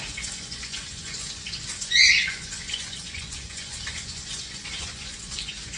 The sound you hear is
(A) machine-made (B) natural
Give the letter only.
A